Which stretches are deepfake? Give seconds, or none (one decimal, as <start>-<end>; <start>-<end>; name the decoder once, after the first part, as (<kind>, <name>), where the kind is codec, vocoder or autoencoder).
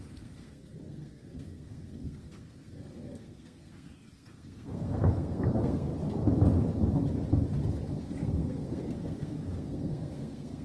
0.0-5.9 (codec, SNAC); 8.0-10.6